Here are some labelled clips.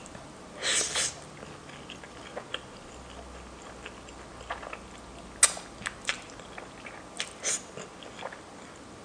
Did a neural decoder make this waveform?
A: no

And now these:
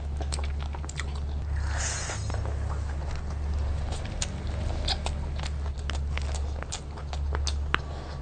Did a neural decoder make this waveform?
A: no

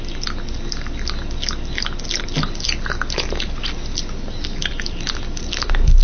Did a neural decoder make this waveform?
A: no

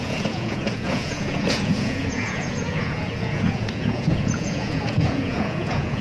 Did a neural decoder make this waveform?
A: yes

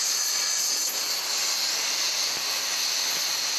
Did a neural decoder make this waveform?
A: no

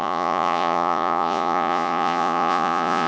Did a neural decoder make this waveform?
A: yes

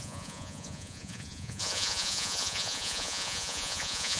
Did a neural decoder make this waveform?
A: yes